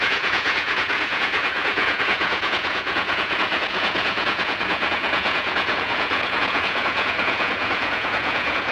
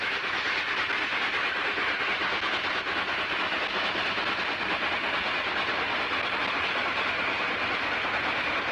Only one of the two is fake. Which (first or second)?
first